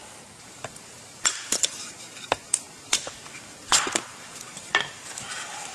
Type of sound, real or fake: fake